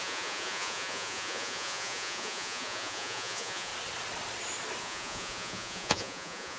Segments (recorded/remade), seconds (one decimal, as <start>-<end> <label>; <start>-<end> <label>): 0.0-3.7 remade; 3.7-4.8 recorded; 4.8-6.6 remade